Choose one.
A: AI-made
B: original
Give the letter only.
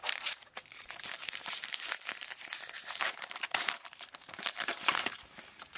A